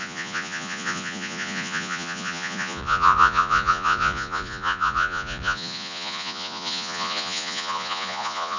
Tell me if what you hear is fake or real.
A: fake